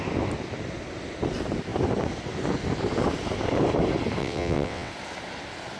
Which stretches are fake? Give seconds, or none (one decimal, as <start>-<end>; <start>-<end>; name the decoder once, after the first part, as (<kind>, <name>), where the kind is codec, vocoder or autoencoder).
4.2-4.9 (vocoder, WaveNeXt)